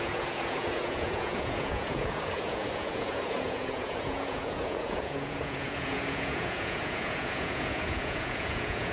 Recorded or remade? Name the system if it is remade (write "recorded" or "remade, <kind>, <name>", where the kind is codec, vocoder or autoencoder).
remade, vocoder, Vocos